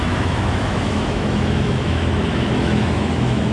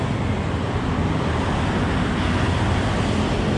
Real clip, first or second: second